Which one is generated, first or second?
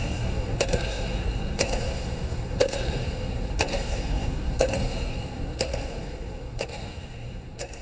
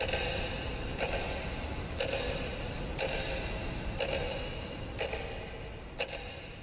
first